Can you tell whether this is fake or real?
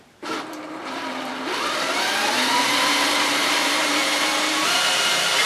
fake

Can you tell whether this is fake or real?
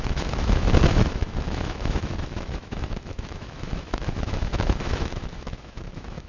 fake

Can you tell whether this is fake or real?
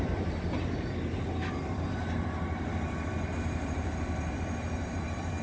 fake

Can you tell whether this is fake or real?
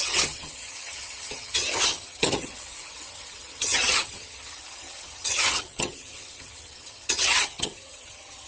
fake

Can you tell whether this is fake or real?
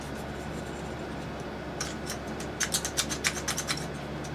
real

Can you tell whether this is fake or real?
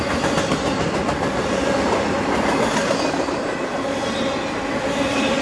real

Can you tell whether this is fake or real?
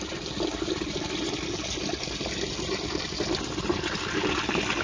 real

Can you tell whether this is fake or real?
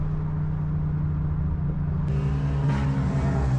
real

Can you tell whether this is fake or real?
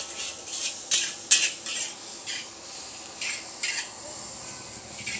real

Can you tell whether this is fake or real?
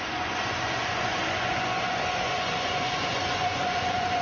fake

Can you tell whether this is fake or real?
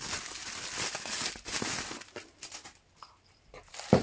real